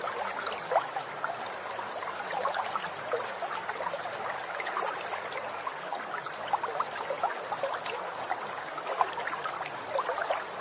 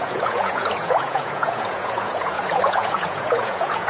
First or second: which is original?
first